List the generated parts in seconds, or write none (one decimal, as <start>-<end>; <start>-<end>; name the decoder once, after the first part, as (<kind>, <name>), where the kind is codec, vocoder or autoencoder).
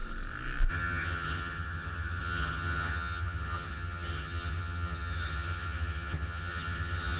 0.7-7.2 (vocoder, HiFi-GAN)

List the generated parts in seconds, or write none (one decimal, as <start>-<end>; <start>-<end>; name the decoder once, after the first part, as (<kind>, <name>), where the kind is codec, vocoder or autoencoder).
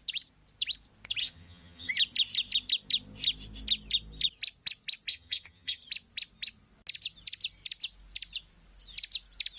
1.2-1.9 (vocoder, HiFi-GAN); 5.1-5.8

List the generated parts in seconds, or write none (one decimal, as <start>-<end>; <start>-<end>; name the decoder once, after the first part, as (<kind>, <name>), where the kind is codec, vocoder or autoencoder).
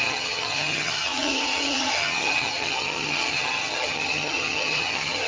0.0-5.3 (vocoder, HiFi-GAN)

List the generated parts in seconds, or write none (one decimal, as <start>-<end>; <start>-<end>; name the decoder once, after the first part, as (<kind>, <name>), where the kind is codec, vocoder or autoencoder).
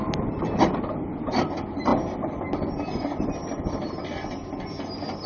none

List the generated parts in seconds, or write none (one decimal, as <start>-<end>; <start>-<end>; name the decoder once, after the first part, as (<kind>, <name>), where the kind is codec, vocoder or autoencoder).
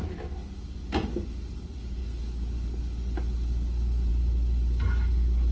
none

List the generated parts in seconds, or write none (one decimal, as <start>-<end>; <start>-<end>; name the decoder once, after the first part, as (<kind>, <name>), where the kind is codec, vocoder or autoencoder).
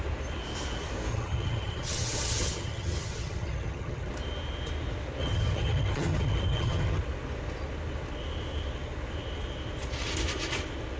1.1-4.1 (vocoder, HiFi-GAN); 5.2-7.0